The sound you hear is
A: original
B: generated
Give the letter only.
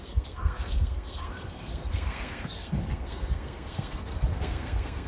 B